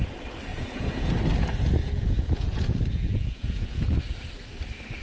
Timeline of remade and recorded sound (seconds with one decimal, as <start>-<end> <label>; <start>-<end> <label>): 0.0-0.5 recorded; 0.5-1.1 remade; 1.1-1.8 recorded; 1.8-4.0 remade; 4.0-5.0 recorded